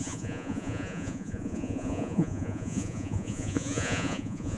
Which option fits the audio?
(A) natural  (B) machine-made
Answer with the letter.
B